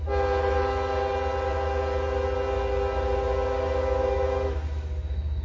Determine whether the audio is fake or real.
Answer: real